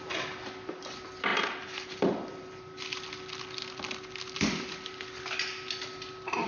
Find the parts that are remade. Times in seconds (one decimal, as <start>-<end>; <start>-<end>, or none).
1.3-5.2